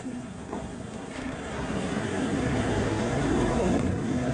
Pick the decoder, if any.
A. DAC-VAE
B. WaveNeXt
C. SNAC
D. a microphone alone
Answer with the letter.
C